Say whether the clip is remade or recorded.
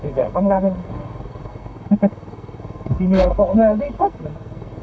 remade